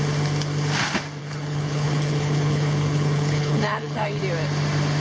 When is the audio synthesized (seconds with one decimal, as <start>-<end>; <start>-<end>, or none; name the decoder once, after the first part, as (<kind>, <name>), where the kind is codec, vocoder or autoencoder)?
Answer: 1.2-4.2 (codec, HILCodec)